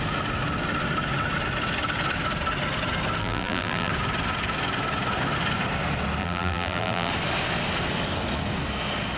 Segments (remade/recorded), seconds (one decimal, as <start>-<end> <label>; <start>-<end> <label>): 0.0-3.2 recorded; 3.2-3.9 remade; 3.9-6.2 recorded; 6.2-7.1 remade; 7.1-9.2 recorded